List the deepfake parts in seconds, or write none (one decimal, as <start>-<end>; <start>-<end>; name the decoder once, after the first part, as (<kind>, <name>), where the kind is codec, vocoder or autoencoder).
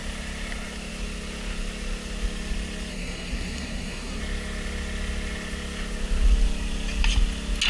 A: 2.9-4.2 (codec, SNAC)